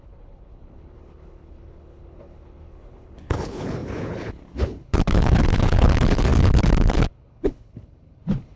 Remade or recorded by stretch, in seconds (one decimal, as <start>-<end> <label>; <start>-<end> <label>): 0.0-8.6 remade

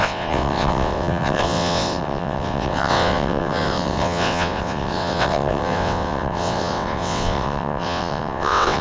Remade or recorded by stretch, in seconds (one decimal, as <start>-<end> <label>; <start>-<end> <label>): 0.0-8.8 remade

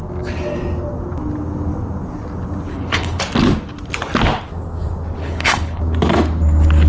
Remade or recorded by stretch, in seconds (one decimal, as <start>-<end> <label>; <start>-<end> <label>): 0.0-2.7 recorded; 2.7-3.2 remade; 3.2-5.2 recorded; 5.2-5.8 remade; 5.8-6.9 recorded

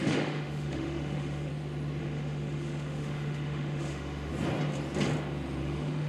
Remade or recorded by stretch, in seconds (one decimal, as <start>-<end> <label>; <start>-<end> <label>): 0.0-1.5 remade; 1.5-2.0 recorded; 2.0-4.3 remade; 4.3-5.6 recorded; 5.6-6.1 remade